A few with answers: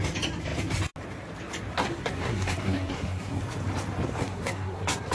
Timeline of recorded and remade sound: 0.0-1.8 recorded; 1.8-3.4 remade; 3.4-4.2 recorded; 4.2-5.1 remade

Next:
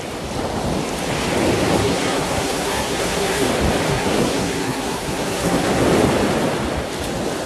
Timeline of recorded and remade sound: 0.0-1.7 recorded; 1.7-3.5 remade; 3.5-3.9 recorded; 3.9-5.8 remade; 5.8-7.5 recorded

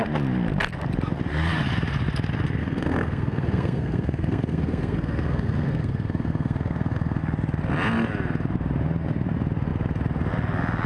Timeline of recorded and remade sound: 0.0-2.6 recorded; 2.6-7.2 remade; 7.2-10.9 recorded